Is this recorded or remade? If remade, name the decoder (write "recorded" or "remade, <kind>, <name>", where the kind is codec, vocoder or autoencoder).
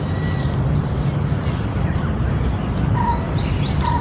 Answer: recorded